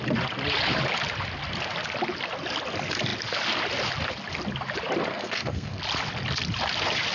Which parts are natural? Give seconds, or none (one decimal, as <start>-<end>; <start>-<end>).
0.0-5.1; 5.8-7.1